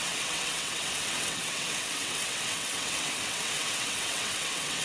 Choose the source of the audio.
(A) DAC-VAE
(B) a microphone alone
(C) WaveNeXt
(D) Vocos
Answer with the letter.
C